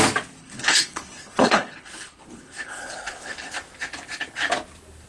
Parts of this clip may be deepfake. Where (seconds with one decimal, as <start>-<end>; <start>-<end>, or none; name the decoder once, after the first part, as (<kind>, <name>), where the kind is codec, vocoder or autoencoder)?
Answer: 0.4-3.5 (codec, HILCodec)